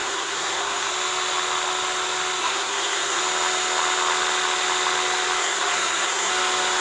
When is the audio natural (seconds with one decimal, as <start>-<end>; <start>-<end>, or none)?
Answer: 0.9-2.4; 3.2-5.4; 6.3-6.8